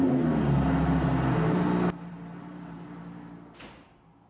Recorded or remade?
recorded